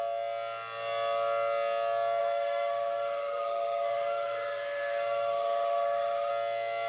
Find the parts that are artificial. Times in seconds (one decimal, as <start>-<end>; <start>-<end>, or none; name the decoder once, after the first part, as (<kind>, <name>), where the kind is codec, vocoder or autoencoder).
2.2-6.3 (codec, SNAC)